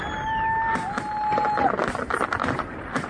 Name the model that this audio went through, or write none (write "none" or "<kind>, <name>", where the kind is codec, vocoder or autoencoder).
none